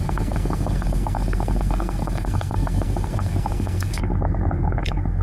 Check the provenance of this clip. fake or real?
fake